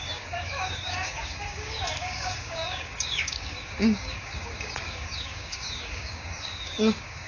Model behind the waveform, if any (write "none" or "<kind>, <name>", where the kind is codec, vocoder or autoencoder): codec, DAC